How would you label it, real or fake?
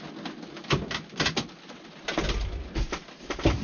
real